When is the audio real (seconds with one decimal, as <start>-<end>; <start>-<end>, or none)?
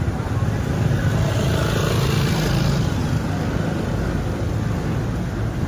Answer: 0.0-5.7